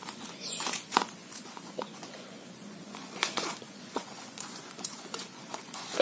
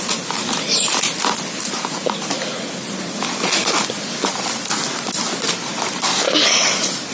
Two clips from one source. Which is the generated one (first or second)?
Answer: first